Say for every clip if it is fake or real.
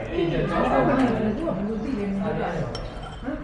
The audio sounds real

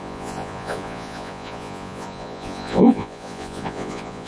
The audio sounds fake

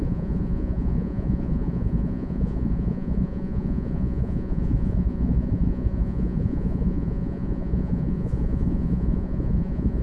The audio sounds fake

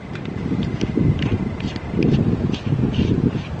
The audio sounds real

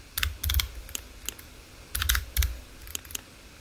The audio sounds real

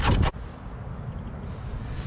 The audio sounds real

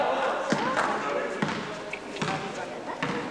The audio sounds real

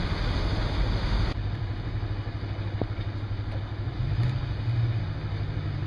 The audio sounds real